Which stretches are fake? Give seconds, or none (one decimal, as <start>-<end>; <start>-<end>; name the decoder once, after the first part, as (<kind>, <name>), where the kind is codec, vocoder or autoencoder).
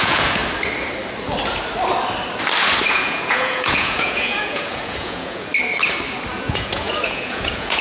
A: 0.0-0.4 (vocoder, Vocos); 2.9-5.5; 6.3-7.8